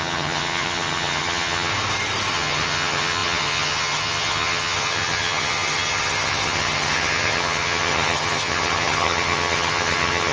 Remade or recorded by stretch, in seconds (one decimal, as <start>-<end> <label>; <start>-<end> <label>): 0.0-1.7 remade; 1.7-2.3 recorded; 2.3-10.3 remade